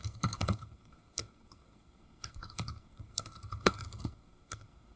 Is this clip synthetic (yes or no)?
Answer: yes